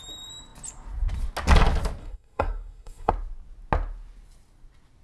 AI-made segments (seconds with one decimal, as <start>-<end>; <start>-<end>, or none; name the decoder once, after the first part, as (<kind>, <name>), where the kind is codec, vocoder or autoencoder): 2.0-3.1 (codec, SNAC)

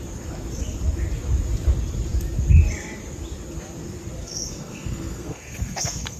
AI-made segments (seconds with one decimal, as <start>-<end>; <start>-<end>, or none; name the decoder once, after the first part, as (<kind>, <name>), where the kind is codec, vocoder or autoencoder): 4.2-6.2 (codec, SNAC)

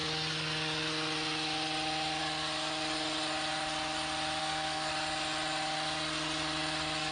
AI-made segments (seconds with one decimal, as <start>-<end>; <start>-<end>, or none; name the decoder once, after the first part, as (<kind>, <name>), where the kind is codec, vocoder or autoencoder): 4.4-4.9 (codec, SNAC)

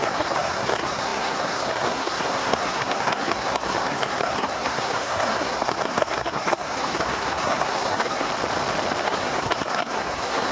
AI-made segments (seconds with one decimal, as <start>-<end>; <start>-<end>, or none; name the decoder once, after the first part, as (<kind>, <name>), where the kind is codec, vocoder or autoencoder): 0.0-8.3 (codec, SNAC); 9.0-10.5

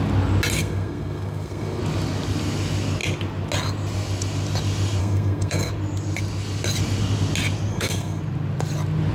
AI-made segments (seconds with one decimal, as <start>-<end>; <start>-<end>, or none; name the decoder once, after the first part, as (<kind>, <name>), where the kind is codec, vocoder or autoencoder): 0.6-1.8 (codec, SNAC); 5.0-5.7; 7.7-8.2

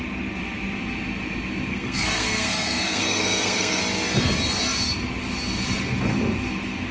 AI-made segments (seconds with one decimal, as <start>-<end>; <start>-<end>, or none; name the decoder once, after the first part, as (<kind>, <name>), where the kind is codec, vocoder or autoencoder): 1.7-3.8 (codec, SNAC)

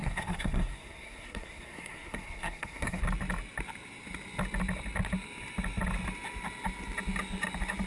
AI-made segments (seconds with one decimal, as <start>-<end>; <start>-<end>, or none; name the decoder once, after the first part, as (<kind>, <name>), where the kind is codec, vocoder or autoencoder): 0.0-3.0 (codec, SNAC)